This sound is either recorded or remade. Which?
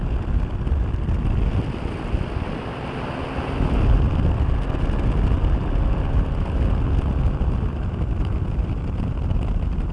recorded